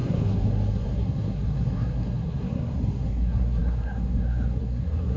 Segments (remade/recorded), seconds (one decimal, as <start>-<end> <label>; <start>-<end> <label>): 0.0-5.2 remade